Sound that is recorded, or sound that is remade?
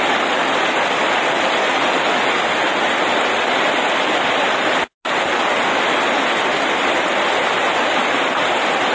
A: recorded